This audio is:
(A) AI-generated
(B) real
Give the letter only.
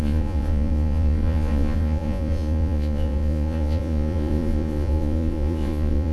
A